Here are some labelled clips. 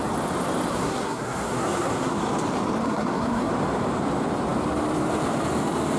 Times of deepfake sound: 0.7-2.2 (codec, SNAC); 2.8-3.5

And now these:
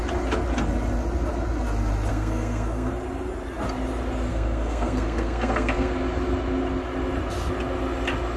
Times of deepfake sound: 2.1-2.9 (codec, SNAC); 4.3-5.9

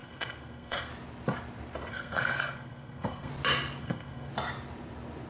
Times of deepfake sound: 0.0-0.9 (codec, SNAC); 1.9-3.3; 3.8-4.3